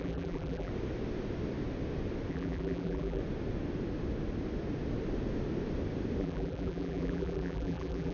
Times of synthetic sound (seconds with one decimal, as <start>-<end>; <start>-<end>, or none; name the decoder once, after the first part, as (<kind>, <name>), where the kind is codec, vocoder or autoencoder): 0.0-0.7 (vocoder, BigVGAN v2); 2.3-3.2; 6.2-8.1